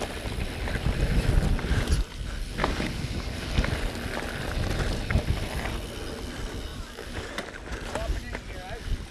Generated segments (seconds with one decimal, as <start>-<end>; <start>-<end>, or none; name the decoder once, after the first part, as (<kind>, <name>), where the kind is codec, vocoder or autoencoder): 2.6-3.5 (codec, DAC); 6.7-7.3